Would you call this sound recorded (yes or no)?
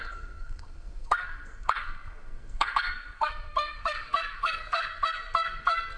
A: no